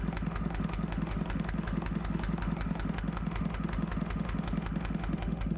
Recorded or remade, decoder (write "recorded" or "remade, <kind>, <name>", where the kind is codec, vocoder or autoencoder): remade, autoencoder, DAC-VAE